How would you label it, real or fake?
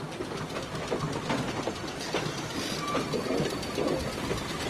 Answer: real